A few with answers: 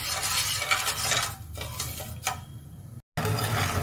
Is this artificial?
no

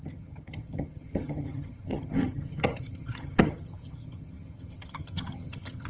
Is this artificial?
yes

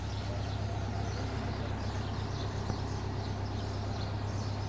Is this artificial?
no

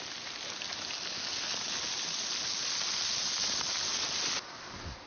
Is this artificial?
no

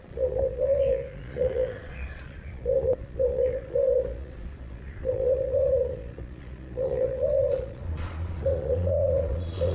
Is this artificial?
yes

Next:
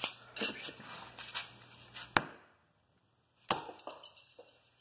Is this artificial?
no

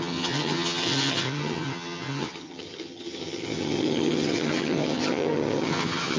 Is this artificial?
yes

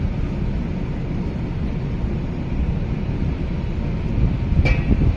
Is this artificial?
no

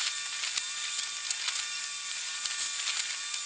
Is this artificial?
no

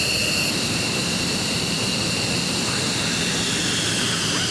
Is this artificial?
no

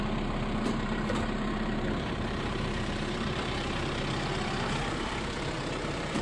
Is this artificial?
yes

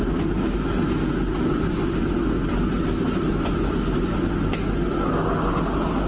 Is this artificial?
no